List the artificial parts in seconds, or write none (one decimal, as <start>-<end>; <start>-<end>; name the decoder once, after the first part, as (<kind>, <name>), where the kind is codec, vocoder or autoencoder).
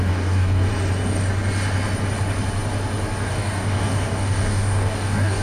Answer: 0.0-0.7 (codec, DAC); 3.3-5.4